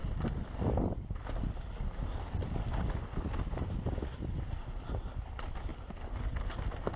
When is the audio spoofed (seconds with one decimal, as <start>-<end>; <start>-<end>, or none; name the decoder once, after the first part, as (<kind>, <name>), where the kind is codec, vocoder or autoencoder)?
0.0-7.0 (vocoder, BigVGAN v2)